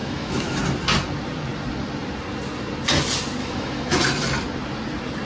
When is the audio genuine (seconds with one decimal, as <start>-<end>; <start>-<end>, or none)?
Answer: 0.6-3.4; 4.0-5.3